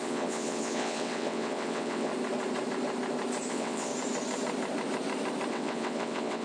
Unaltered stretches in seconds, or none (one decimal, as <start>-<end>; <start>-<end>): 2.1-3.5; 3.9-5.5